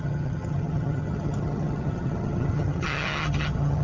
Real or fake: fake